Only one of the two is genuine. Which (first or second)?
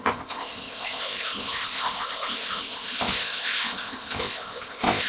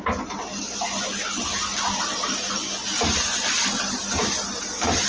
second